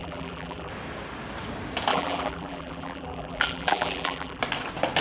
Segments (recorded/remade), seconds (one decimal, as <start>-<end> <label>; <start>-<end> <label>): 0.0-0.7 remade; 0.7-1.9 recorded; 1.9-4.4 remade; 4.4-5.0 recorded